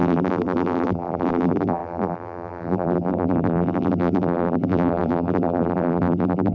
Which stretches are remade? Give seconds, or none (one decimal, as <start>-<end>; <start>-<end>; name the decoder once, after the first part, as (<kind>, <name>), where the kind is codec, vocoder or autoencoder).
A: 0.0-6.5 (vocoder, BigVGAN v2)